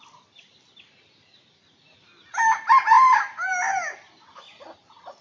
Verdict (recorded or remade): recorded